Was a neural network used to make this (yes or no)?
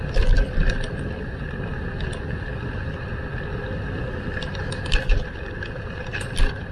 no